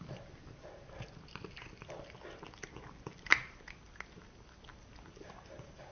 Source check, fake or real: real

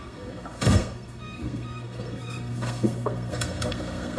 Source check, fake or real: fake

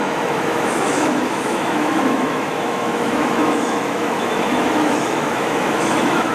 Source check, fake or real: fake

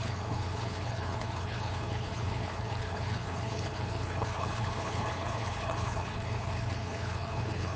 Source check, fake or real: fake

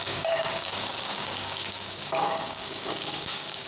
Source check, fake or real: fake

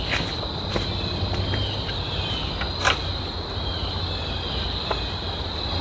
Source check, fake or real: real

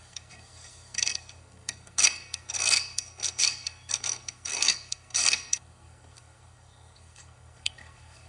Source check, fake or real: fake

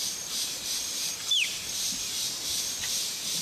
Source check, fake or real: fake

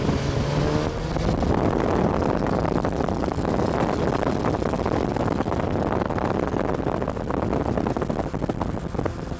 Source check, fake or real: real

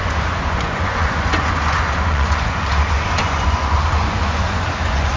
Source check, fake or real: fake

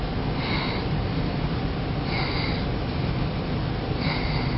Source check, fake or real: real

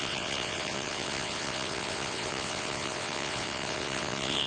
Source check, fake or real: fake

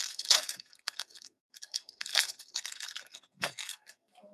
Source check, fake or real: fake